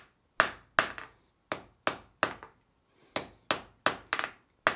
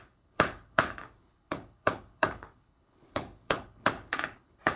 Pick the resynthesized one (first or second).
second